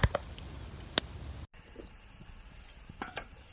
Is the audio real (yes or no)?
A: yes